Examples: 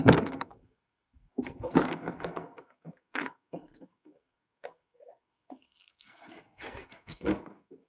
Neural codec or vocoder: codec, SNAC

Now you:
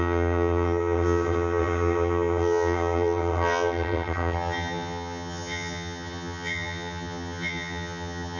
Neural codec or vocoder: vocoder, HiFi-GAN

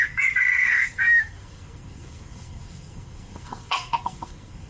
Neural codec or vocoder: codec, SNAC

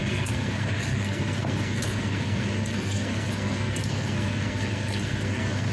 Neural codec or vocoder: codec, SNAC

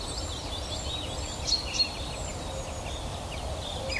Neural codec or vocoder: none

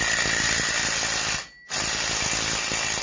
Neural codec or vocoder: none